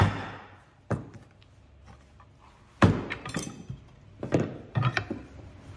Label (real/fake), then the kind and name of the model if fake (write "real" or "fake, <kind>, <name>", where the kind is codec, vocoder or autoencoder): real